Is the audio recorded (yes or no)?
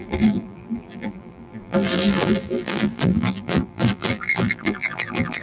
no